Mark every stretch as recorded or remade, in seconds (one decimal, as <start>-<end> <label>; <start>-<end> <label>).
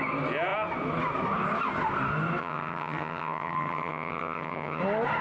0.0-2.4 recorded; 2.4-4.8 remade; 4.8-5.2 recorded